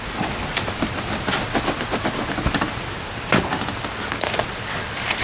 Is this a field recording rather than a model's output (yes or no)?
yes